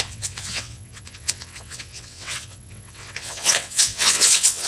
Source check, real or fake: fake